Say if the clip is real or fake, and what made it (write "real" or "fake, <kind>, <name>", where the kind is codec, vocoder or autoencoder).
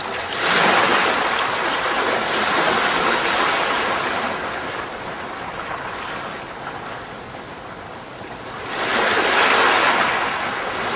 real